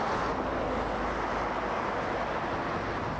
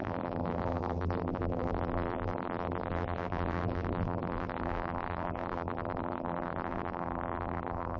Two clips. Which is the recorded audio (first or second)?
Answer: first